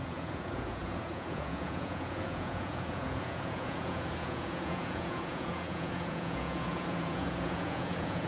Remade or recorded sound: remade